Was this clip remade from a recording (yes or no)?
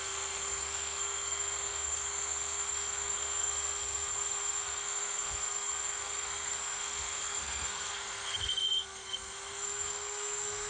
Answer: yes